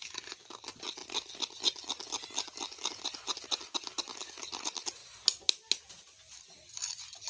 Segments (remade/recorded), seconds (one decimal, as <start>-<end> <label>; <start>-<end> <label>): 0.0-7.3 recorded